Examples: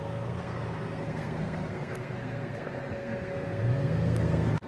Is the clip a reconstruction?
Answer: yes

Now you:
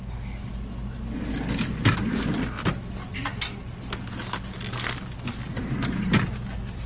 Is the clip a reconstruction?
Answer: no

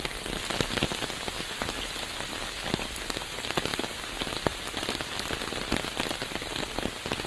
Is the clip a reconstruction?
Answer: no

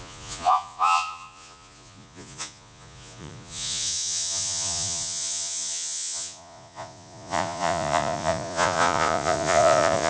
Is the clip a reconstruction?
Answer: yes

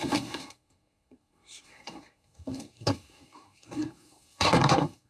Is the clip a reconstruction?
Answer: yes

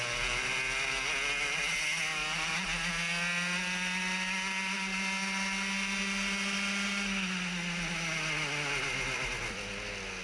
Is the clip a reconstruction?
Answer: no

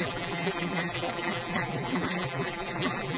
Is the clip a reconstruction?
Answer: yes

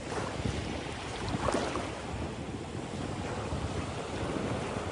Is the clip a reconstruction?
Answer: no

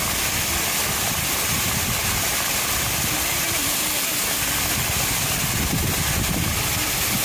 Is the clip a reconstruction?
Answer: no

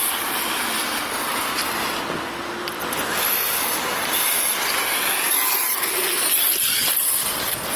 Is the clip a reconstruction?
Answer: no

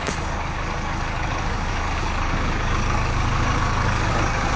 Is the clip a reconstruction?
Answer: yes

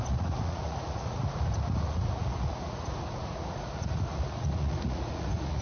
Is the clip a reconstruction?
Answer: yes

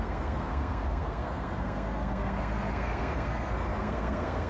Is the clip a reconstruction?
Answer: yes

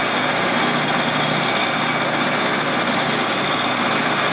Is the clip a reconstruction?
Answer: no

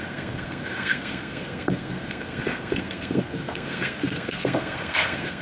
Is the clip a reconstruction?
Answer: yes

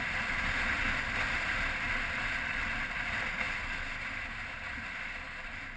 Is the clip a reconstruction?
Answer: no